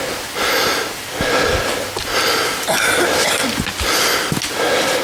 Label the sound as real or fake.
real